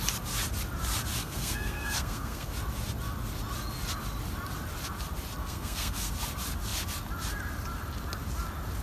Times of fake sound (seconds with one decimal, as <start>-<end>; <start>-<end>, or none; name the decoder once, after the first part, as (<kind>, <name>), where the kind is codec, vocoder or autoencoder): 1.2-2.5 (codec, SNAC); 5.4-6.1